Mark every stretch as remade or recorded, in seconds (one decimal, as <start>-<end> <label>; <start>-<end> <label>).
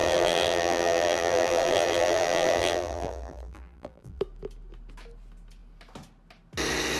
0.0-4.2 remade; 4.2-7.0 recorded